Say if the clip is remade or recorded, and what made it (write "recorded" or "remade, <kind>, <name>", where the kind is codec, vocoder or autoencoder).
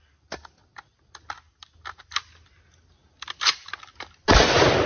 recorded